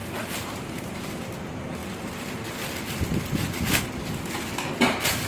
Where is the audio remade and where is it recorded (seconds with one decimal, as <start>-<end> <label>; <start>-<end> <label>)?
0.0-5.3 recorded